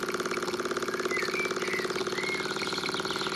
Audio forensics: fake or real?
real